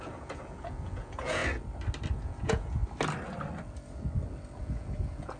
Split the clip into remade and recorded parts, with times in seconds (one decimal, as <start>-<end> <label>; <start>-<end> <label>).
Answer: 0.0-1.4 remade; 1.4-2.2 recorded; 2.2-2.8 remade; 2.8-4.6 recorded; 4.6-5.4 remade